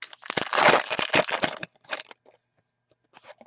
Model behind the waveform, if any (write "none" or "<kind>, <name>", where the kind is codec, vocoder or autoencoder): none